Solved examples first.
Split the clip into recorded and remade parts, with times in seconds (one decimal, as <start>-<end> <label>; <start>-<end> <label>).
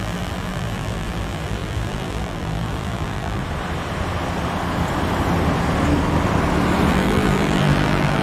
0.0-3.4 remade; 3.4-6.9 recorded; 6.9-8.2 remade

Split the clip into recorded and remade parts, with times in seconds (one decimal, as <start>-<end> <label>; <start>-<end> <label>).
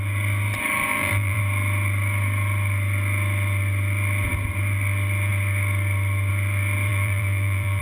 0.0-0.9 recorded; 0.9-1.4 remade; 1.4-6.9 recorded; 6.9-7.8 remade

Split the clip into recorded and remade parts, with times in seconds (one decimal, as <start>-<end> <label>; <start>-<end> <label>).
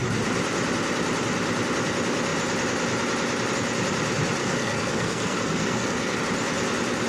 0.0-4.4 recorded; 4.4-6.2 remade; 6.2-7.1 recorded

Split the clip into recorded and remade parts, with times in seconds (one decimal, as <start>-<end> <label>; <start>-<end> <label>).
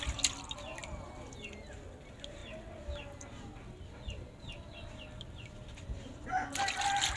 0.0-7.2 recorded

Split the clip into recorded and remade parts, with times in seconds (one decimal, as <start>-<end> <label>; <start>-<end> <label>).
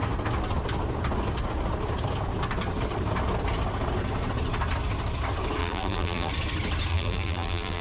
0.0-5.6 recorded; 5.6-6.3 remade; 6.3-6.9 recorded; 6.9-7.8 remade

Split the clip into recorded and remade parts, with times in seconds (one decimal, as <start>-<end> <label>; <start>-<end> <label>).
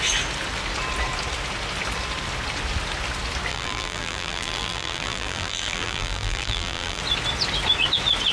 0.0-3.5 recorded; 3.5-7.0 remade; 7.0-8.3 recorded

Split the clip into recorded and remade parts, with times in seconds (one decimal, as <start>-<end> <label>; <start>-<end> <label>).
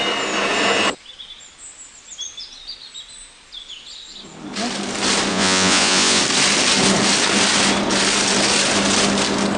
0.0-5.3 recorded; 5.3-6.2 remade; 6.2-9.6 recorded